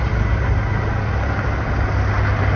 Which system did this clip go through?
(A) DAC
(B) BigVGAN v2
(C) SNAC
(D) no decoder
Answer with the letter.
D